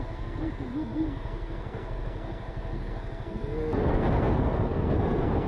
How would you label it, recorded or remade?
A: remade